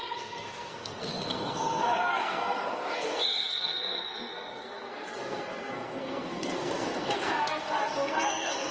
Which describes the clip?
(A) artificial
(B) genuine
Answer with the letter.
A